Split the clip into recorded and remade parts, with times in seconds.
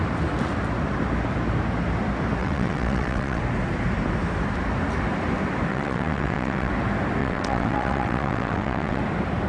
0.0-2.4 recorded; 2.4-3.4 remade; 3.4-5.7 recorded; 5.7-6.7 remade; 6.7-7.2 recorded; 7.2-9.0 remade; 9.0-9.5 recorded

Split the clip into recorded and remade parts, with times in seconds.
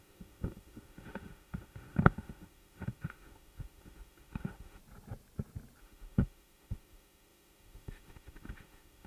0.0-4.8 remade; 4.8-5.8 recorded; 5.8-9.1 remade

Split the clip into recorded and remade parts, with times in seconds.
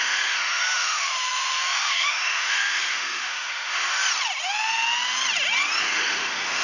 0.0-4.0 remade; 4.0-5.8 recorded; 5.8-6.6 remade